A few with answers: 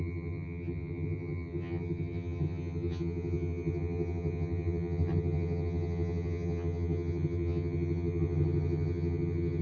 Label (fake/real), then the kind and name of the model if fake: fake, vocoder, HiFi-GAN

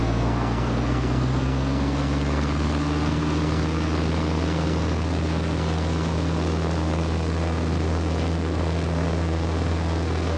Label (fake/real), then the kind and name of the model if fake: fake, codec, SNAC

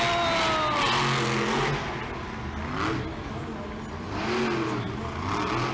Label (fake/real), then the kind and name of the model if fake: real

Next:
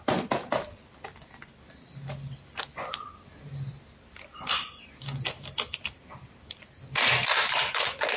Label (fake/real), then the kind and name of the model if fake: fake, vocoder, BigVGAN v2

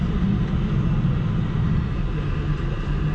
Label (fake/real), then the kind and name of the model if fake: real